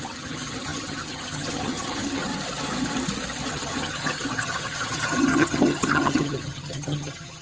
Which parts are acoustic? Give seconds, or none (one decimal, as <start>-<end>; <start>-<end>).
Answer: 2.3-3.5